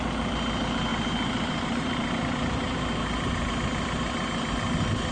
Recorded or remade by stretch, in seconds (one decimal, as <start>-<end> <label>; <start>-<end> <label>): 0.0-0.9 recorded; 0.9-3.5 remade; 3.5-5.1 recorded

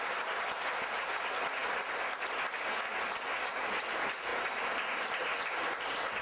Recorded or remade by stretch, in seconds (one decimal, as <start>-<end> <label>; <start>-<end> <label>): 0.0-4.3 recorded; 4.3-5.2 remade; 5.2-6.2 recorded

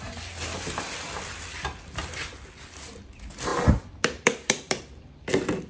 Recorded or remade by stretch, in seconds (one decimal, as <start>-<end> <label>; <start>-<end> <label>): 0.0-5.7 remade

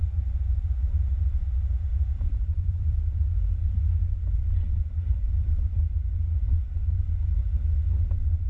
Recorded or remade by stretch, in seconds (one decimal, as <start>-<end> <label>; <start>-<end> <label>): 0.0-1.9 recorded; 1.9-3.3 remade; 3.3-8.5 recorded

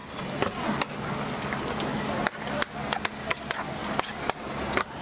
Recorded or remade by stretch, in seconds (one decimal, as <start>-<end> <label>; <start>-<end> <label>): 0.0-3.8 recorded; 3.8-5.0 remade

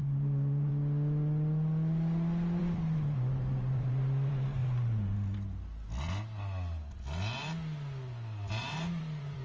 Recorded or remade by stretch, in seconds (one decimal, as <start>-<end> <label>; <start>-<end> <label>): 0.0-0.7 remade; 0.7-2.6 recorded; 2.6-4.6 remade; 4.6-8.5 recorded; 8.5-9.4 remade

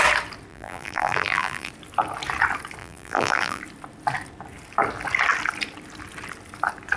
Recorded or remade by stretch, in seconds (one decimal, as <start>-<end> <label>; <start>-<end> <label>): 0.0-0.5 recorded; 0.5-1.7 remade; 1.7-2.8 recorded; 2.8-3.6 remade; 3.6-7.0 recorded

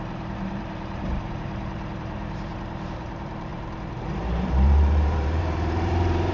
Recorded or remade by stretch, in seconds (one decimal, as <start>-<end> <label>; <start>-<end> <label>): 0.0-6.3 remade